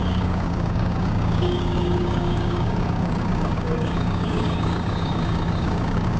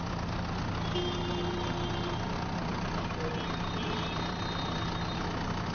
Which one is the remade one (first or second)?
first